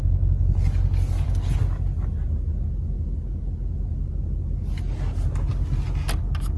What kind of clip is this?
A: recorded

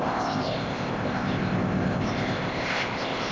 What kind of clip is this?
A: remade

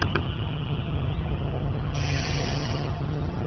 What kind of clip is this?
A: remade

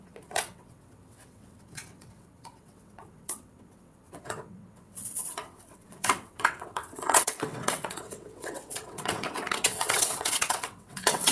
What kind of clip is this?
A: remade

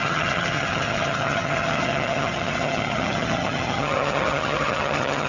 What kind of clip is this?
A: remade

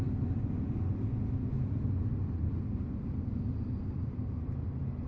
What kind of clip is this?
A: recorded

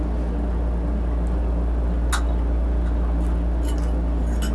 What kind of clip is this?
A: recorded